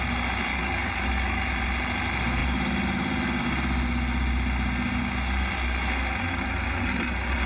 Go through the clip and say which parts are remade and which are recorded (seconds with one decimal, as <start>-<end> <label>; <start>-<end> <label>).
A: 0.0-0.5 recorded; 0.5-1.5 remade; 1.5-7.5 recorded